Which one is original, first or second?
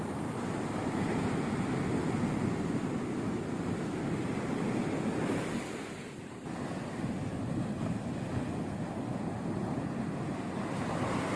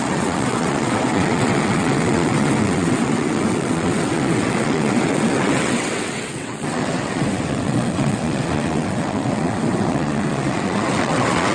first